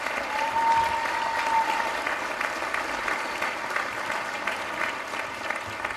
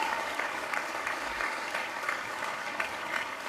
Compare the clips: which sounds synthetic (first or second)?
second